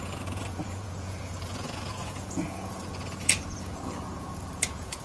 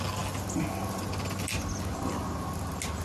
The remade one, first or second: first